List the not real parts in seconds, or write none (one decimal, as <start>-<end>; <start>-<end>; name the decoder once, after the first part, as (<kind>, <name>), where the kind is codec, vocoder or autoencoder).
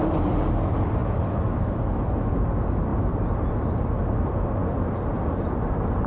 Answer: none